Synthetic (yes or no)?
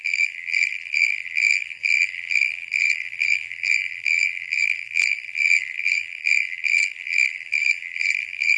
yes